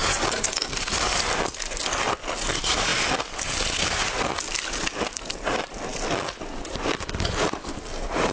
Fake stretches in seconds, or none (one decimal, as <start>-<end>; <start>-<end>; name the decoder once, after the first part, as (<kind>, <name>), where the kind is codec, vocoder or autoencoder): none